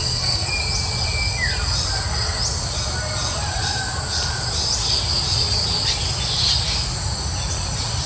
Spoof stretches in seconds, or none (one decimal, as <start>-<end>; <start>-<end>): 0.0-0.5